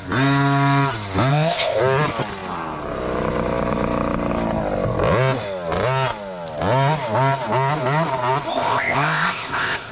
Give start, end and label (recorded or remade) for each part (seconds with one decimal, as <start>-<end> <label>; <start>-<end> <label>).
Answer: 0.0-1.3 recorded; 1.3-1.8 remade; 1.8-8.5 recorded; 8.5-9.9 remade

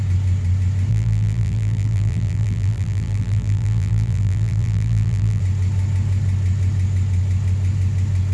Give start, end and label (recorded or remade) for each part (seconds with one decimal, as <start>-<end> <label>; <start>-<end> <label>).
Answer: 0.0-0.9 recorded; 0.9-5.4 remade; 5.4-8.3 recorded

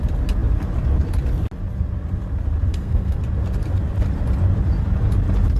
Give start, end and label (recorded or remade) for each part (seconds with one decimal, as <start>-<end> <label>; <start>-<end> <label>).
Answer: 0.0-2.7 recorded; 2.7-3.2 remade; 3.2-5.6 recorded

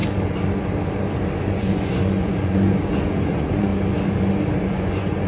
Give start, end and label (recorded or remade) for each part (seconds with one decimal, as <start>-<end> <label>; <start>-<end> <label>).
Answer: 0.0-1.4 recorded; 1.4-3.7 remade; 3.7-4.6 recorded; 4.6-5.3 remade

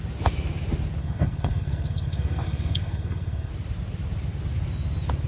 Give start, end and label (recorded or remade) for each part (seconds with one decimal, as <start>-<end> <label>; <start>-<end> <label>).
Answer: 0.0-1.0 recorded; 1.0-3.5 remade; 3.5-5.3 recorded

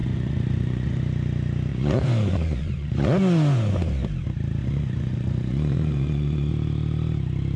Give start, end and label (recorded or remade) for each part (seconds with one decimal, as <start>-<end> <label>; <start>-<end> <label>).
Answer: 0.0-1.0 remade; 1.0-1.7 recorded; 1.7-3.7 remade; 3.7-4.6 recorded; 4.6-6.5 remade; 6.5-7.6 recorded